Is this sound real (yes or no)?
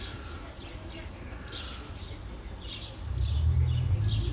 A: yes